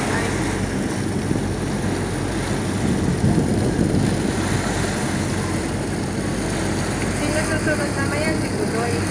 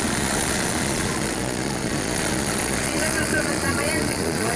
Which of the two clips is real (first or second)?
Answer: first